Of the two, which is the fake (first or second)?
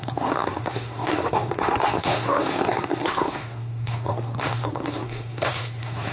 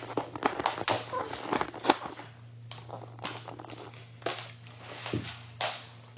first